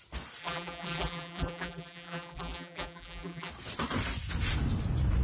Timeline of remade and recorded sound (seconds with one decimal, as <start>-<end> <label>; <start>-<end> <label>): 0.0-0.4 recorded; 0.4-3.5 remade; 3.5-5.2 recorded